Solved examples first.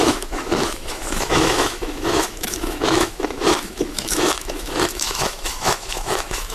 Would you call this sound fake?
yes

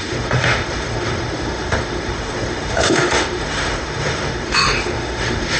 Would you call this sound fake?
yes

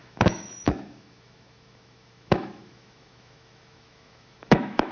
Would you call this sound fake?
yes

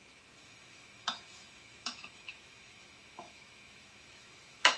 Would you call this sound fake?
yes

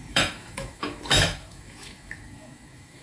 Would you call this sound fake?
yes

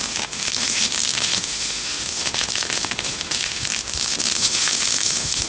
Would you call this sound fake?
yes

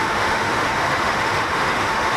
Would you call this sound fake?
yes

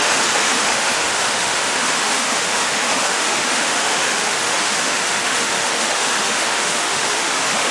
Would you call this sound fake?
yes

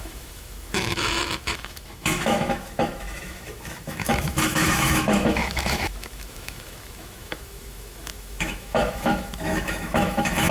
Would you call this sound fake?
yes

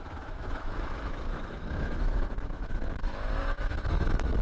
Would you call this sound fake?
yes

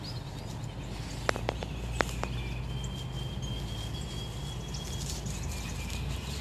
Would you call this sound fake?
no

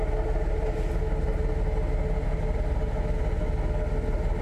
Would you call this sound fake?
no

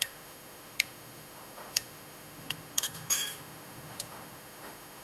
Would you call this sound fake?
yes